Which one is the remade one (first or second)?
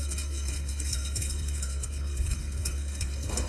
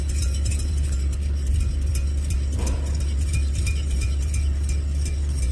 first